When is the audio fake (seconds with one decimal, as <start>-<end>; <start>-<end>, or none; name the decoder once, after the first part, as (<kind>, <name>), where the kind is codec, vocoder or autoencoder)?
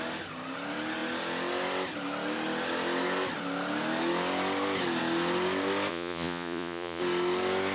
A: 5.9-7.0 (vocoder, Vocos)